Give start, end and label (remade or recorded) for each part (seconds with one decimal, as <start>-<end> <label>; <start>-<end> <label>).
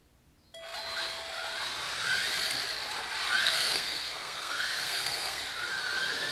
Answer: 0.0-3.4 recorded; 3.4-5.4 remade; 5.4-6.3 recorded